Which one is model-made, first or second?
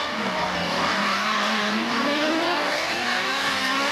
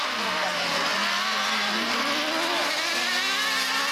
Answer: first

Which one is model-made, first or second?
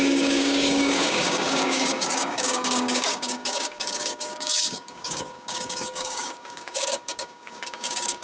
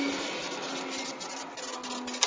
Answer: first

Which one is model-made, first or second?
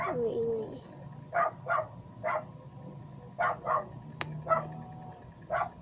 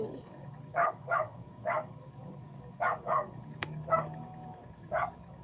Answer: second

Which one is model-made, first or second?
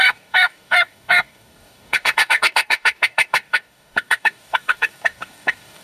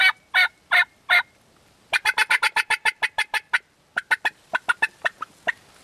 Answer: first